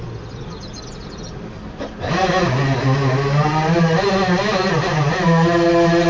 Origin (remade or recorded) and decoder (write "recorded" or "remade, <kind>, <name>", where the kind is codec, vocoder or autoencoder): recorded